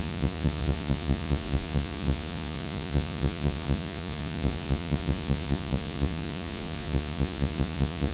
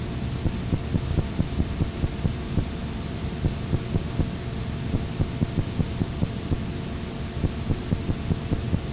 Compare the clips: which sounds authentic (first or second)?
second